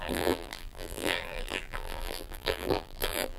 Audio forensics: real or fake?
fake